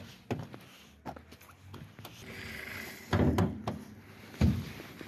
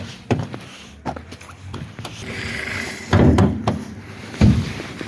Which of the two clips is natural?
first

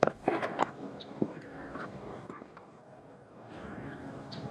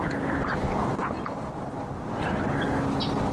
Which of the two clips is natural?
second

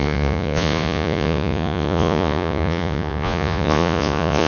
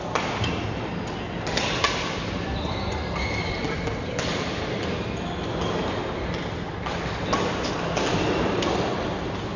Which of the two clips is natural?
second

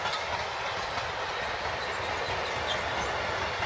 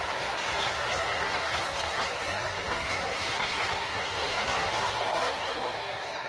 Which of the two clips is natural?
first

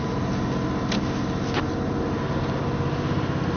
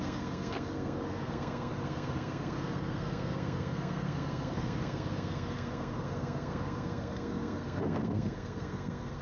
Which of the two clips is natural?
first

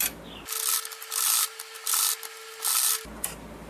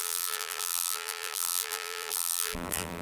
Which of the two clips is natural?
first